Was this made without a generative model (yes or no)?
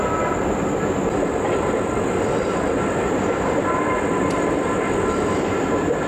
no